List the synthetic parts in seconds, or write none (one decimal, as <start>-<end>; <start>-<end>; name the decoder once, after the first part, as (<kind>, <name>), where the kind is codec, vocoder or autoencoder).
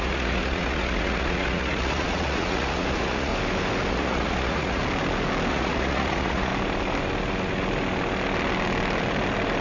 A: 0.0-3.3 (vocoder, Vocos); 3.9-4.8; 5.5-6.5